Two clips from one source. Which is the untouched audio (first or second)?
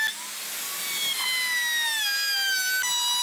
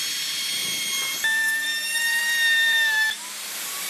first